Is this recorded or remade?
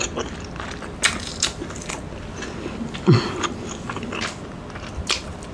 recorded